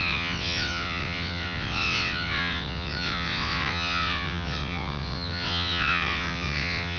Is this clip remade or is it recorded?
remade